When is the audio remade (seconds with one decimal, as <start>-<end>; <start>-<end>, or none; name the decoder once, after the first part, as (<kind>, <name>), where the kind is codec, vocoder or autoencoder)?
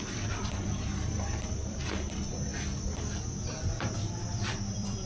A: 0.0-2.5 (vocoder, BigVGAN v2); 4.3-5.1